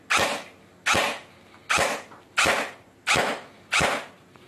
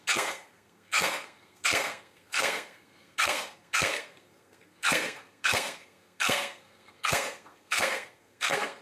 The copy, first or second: second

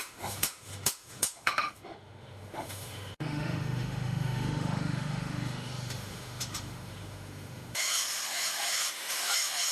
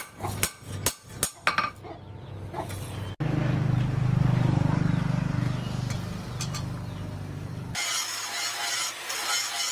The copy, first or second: first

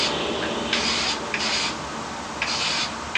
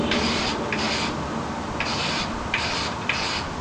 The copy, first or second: second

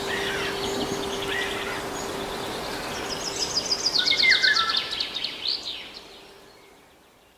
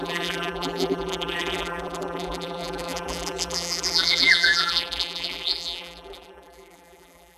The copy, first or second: second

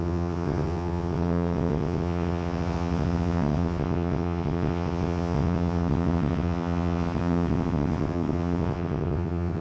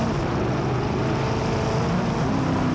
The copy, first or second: first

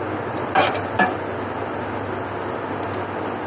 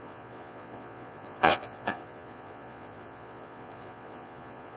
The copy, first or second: second